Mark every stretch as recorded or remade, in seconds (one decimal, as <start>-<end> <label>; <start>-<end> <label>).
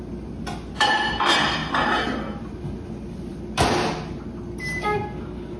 0.0-5.6 recorded